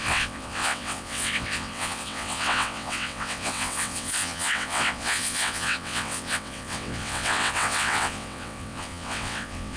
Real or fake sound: fake